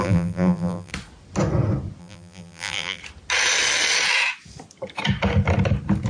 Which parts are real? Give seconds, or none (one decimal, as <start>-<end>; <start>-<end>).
0.9-2.0; 3.0-6.1